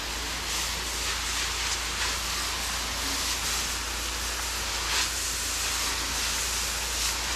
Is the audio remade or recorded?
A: recorded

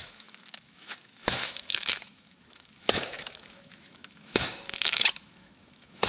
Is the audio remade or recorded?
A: remade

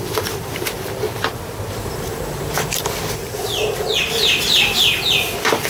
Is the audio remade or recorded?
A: remade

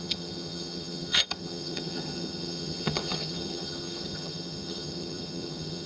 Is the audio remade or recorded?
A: remade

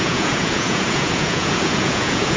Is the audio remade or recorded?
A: remade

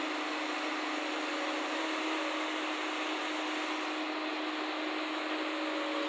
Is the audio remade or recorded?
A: recorded